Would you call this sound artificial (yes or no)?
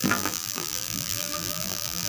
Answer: yes